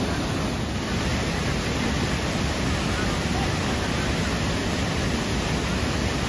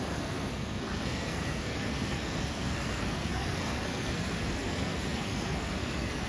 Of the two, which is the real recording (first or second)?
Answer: first